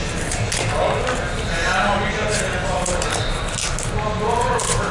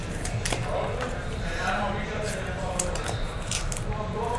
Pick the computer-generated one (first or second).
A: second